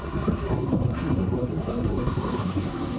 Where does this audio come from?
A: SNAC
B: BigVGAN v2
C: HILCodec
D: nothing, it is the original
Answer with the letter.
A